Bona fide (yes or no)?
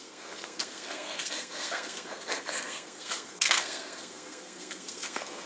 no